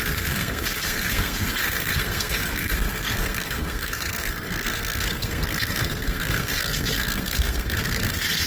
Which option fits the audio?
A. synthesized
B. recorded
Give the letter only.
A